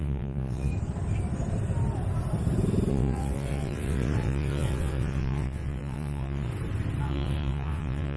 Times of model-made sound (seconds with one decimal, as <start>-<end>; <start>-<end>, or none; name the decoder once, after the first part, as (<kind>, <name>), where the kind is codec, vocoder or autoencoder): 0.0-0.7 (vocoder, WaveNeXt); 2.9-6.5; 7.0-8.2